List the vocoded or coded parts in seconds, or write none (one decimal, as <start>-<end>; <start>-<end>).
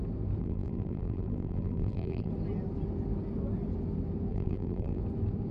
0.4-2.3; 4.3-5.0